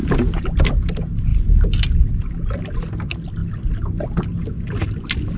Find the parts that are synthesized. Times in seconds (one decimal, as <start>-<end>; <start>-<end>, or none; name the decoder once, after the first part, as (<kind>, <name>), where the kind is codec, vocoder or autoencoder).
3.4-4.2 (vocoder, BigVGAN v2)